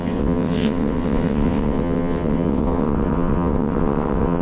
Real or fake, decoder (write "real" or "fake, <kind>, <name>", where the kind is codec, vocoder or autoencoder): fake, vocoder, WaveNeXt